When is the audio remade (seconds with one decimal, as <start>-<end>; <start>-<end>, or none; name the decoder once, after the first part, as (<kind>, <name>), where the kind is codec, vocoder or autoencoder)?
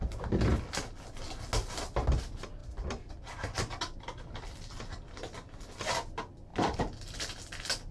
2.6-3.2 (vocoder, BigVGAN v2); 6.5-7.4